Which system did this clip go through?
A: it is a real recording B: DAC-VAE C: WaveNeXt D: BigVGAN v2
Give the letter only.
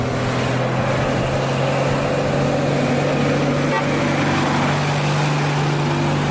A